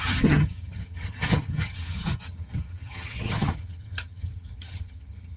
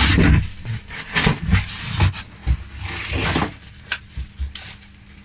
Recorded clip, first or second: second